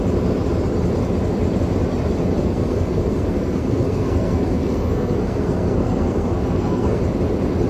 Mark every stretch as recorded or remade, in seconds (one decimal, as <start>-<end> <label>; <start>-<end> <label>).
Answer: 0.0-2.4 recorded; 2.4-7.0 remade; 7.0-7.7 recorded